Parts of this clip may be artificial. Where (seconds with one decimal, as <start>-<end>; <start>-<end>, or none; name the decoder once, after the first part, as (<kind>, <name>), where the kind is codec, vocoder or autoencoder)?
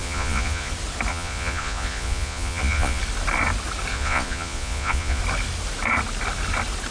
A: 0.0-0.7 (vocoder, Vocos); 1.1-3.0; 3.9-5.2